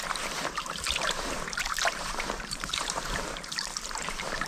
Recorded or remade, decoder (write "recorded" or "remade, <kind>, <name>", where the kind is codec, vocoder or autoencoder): remade, vocoder, BigVGAN v2